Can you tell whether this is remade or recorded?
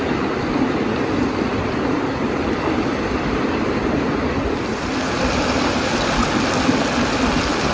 recorded